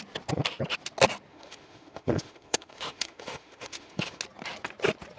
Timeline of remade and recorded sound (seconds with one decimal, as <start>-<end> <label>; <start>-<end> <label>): 0.0-1.3 recorded; 1.3-4.2 remade; 4.2-5.2 recorded